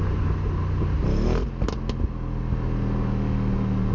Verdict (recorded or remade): recorded